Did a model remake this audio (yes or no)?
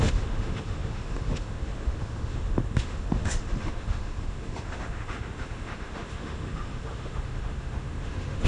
yes